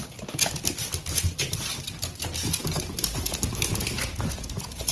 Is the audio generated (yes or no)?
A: no